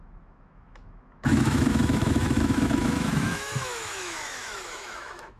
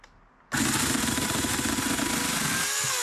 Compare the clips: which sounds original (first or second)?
second